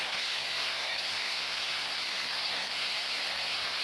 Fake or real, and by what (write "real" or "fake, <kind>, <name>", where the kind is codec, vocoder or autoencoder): fake, codec, SNAC